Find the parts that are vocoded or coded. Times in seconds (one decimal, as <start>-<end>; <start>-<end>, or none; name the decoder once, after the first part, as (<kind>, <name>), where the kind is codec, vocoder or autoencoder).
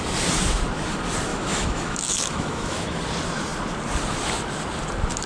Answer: 1.3-3.0 (autoencoder, DAC-VAE)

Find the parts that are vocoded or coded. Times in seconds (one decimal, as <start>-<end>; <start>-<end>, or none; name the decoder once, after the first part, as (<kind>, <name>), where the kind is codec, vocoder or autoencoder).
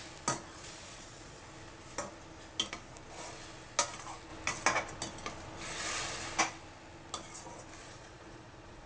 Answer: 0.5-1.4 (vocoder, Vocos); 7.8-8.9